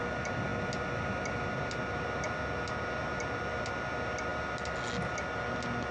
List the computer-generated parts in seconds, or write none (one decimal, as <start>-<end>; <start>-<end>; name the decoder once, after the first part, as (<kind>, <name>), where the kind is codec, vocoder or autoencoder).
none